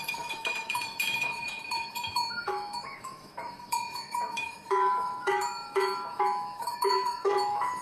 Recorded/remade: remade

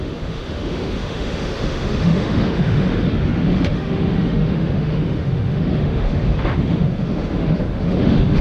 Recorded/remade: remade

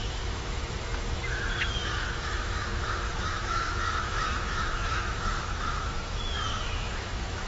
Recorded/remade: remade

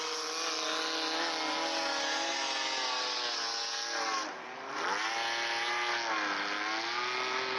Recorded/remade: recorded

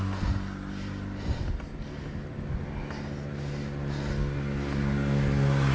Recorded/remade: recorded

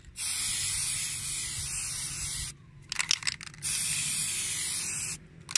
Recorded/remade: recorded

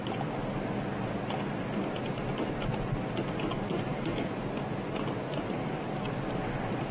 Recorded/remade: recorded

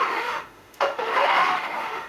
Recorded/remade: remade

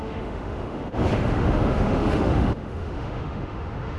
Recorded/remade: remade